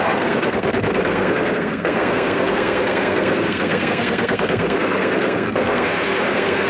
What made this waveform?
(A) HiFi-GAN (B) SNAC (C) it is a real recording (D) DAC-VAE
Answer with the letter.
B